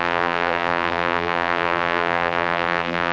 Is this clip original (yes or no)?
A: no